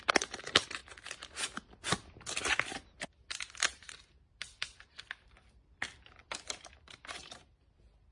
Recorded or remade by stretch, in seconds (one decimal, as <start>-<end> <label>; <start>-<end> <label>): 0.0-0.8 remade; 0.8-4.3 recorded; 4.3-6.2 remade; 6.2-8.1 recorded